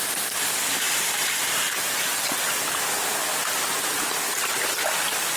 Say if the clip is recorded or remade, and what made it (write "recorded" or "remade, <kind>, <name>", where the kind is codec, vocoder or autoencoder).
recorded